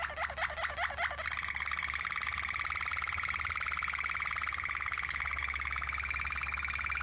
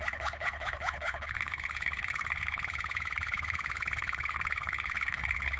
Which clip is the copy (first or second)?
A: second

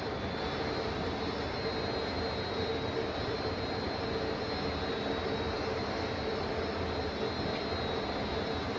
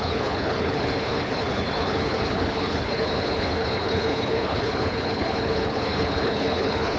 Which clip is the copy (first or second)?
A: second